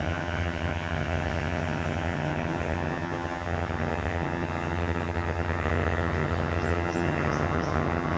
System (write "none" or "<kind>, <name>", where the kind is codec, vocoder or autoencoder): vocoder, HiFi-GAN